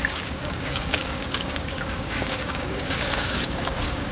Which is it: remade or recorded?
remade